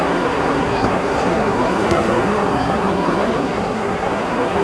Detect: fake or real fake